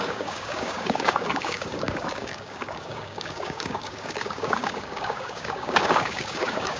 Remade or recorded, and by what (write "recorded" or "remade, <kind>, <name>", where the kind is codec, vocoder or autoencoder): remade, codec, DAC